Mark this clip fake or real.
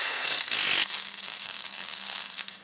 fake